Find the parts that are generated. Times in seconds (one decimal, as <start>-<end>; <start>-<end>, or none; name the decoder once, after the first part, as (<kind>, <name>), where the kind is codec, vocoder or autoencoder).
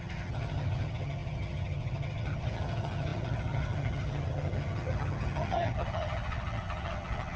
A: 0.0-7.4 (vocoder, HiFi-GAN)